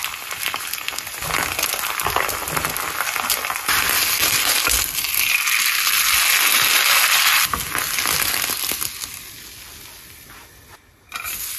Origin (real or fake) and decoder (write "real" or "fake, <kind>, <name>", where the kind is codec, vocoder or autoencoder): real